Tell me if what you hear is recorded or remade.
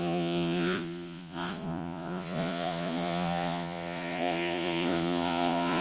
remade